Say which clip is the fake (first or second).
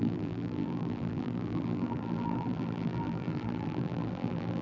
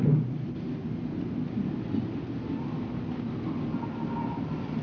first